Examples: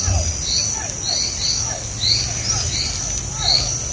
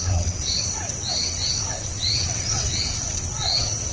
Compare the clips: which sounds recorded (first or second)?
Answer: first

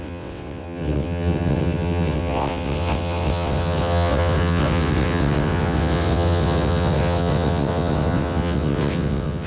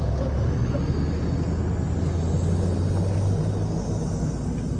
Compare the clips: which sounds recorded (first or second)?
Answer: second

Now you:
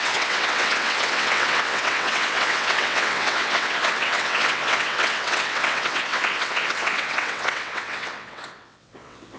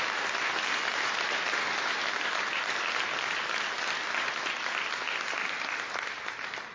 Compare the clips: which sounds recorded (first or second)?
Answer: second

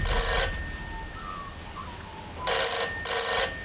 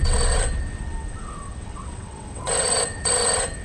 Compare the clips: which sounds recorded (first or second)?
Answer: first